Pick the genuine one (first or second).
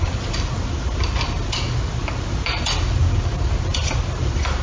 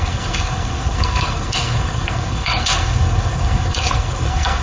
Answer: first